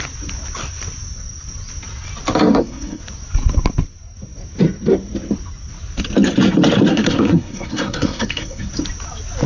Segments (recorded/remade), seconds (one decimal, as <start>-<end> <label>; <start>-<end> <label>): 0.0-2.5 recorded; 2.5-3.0 remade; 3.0-6.9 recorded; 6.9-8.7 remade; 8.7-9.5 recorded